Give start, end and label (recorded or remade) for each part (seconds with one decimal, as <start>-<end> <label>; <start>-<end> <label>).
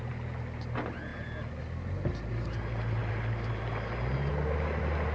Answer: 0.0-5.1 recorded